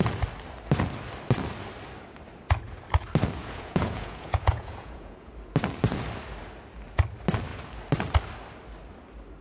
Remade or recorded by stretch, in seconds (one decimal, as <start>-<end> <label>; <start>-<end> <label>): 0.0-3.4 recorded; 3.4-5.3 remade; 5.3-9.4 recorded